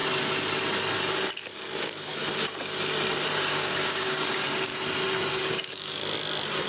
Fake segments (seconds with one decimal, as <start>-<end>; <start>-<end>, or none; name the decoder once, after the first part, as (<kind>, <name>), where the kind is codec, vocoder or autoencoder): 3.5-4.7 (codec, DAC); 5.3-6.0

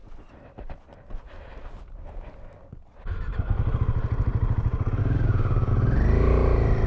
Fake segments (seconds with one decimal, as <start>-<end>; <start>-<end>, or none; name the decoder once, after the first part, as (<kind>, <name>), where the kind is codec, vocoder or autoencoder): 5.0-5.7 (codec, DAC)

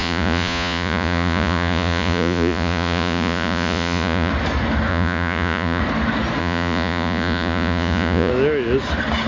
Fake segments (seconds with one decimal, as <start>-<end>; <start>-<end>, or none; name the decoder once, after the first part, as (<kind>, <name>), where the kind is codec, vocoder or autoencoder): 0.0-4.3 (vocoder, Vocos); 4.9-5.8; 6.4-8.3

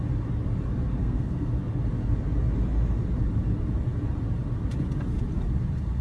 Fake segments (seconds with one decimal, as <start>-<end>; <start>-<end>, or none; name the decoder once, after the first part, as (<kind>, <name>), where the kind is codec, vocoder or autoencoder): 1.0-1.5 (codec, SNAC)

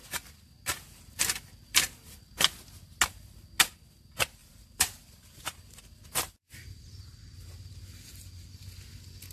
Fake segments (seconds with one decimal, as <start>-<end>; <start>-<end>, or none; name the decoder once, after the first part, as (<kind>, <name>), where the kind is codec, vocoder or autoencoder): 4.4-5.8 (vocoder, BigVGAN v2); 6.5-8.7

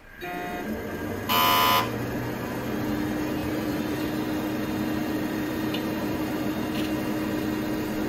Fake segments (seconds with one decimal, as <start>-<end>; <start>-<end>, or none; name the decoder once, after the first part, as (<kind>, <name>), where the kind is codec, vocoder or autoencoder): 3.4-4.1 (vocoder, BigVGAN v2); 5.0-6.6